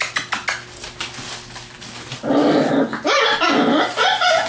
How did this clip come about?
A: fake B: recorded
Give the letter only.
B